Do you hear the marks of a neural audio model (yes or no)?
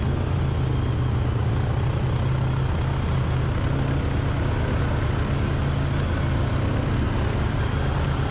no